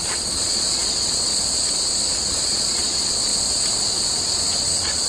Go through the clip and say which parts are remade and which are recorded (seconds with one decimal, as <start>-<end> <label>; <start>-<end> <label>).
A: 0.0-1.3 remade; 1.3-2.3 recorded; 2.3-3.3 remade; 3.3-4.6 recorded; 4.6-5.1 remade

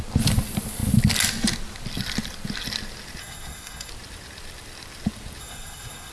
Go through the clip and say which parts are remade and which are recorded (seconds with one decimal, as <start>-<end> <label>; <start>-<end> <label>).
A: 0.0-3.2 recorded; 3.2-3.9 remade; 3.9-5.4 recorded; 5.4-6.1 remade